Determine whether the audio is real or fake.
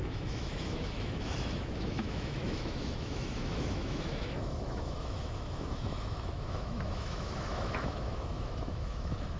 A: fake